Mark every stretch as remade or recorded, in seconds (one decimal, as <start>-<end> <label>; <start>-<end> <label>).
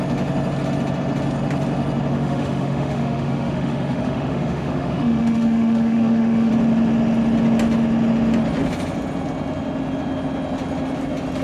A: 0.0-2.1 recorded; 2.1-6.5 remade; 6.5-11.4 recorded